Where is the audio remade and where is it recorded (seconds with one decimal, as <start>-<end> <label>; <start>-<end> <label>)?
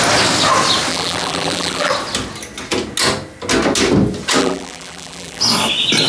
0.0-0.9 recorded; 0.9-1.9 remade; 1.9-4.4 recorded; 4.4-5.4 remade; 5.4-6.1 recorded